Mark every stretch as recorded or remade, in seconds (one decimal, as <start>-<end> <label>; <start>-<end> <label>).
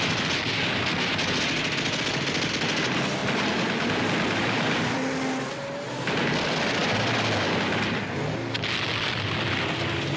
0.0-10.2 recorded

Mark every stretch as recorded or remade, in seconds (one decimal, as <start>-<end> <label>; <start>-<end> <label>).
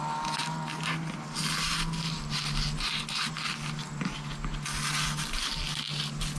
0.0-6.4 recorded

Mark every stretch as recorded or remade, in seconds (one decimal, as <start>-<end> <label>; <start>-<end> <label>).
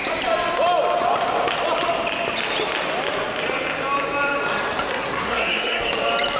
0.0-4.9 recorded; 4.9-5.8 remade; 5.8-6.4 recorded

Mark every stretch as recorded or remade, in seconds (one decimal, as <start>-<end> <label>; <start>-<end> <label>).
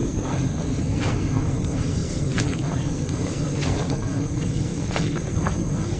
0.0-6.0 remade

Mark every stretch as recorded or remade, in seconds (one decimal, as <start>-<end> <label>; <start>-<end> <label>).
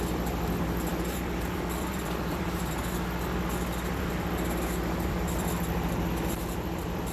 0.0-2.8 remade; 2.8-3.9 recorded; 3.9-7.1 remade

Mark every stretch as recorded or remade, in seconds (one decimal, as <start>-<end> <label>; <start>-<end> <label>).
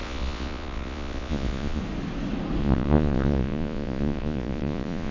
0.0-1.8 remade; 1.8-2.6 recorded; 2.6-5.1 remade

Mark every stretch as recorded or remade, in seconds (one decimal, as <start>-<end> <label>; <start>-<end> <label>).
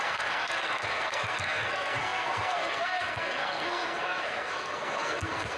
0.0-5.6 remade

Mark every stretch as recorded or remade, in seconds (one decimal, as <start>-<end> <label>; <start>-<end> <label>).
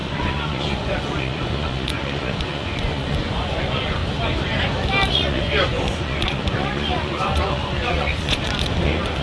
0.0-4.0 remade; 4.0-5.1 recorded; 5.1-9.2 remade